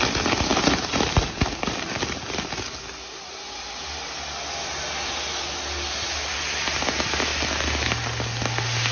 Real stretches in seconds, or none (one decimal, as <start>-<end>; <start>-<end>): 0.0-8.9